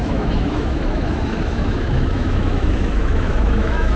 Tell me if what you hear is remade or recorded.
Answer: remade